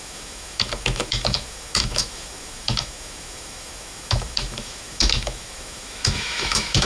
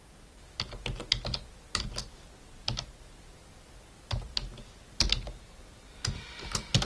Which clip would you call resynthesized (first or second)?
first